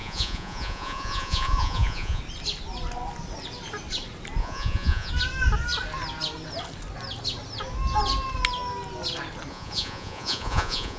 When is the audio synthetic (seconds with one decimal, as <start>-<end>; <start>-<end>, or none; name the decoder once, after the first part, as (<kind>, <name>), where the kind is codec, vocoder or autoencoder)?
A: 0.0-2.2 (vocoder, Vocos); 4.4-5.1; 9.5-11.0